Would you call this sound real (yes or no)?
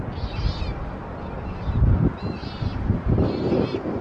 yes